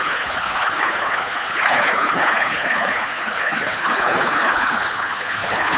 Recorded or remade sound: remade